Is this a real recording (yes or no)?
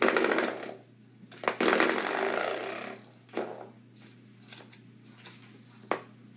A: yes